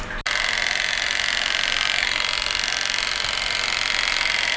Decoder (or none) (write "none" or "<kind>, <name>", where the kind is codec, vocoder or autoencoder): none